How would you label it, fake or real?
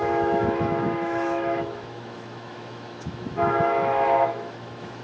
fake